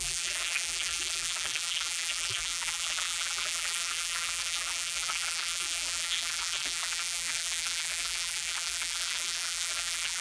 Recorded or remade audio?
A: remade